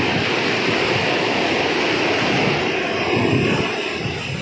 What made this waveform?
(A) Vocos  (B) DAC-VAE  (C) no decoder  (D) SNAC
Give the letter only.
C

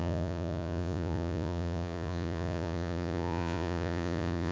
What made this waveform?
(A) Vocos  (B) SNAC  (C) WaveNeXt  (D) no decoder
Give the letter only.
A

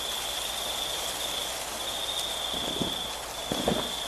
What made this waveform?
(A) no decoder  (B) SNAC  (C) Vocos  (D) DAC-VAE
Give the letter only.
A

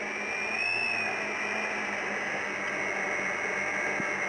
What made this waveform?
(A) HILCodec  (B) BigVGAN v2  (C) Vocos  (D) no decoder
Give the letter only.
D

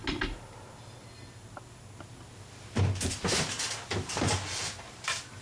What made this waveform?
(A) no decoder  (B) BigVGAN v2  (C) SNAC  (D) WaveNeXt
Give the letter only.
A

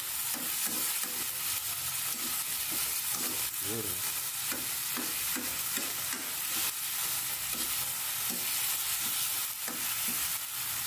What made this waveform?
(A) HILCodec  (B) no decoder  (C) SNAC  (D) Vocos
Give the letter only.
B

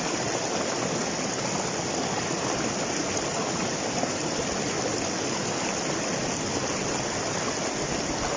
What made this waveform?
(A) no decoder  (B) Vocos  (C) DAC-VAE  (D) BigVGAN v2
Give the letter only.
A